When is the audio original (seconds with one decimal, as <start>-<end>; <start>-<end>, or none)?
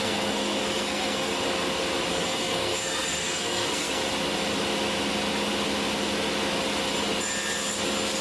1.3-2.1; 4.0-8.2